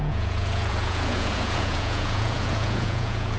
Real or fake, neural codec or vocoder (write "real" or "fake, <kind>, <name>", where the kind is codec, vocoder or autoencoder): fake, vocoder, Vocos